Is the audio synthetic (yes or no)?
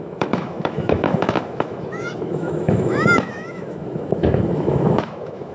yes